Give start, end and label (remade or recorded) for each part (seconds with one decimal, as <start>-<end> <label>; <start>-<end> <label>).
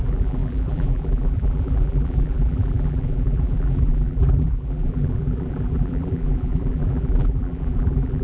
0.0-8.2 remade